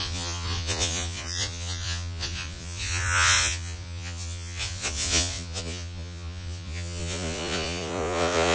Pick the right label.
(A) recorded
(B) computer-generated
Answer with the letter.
B